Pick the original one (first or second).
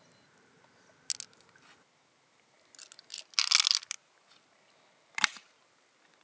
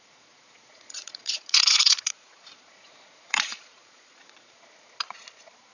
first